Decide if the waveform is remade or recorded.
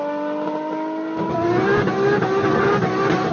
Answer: recorded